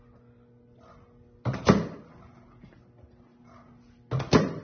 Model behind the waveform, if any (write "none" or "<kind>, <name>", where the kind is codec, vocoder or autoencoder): none